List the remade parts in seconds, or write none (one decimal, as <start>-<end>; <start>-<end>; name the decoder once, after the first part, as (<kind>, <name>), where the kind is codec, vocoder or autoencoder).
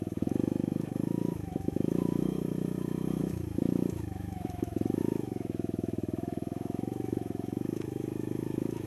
0.0-8.9 (autoencoder, DAC-VAE)